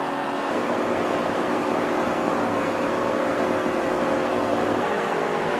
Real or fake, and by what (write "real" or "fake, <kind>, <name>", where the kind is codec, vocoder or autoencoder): fake, codec, SNAC